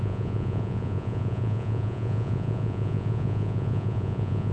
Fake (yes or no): yes